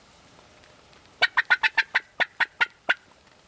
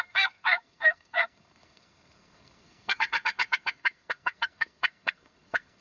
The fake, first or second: second